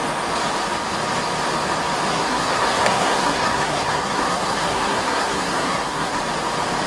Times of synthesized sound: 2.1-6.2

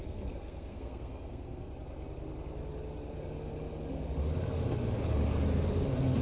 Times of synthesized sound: 0.0-1.7

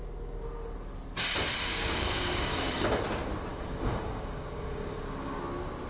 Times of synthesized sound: 1.7-2.7; 3.5-5.4

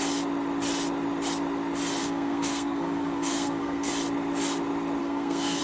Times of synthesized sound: 2.0-3.9; 5.0-5.6

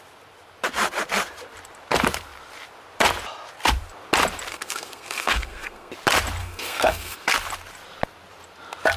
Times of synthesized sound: 4.5-5.9; 6.4-7.3

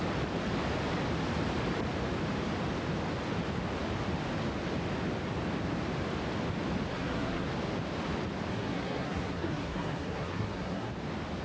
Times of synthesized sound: 6.9-7.5; 8.5-10.9